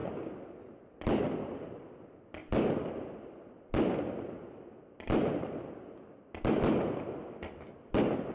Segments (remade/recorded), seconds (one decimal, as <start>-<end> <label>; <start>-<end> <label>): 0.0-8.3 recorded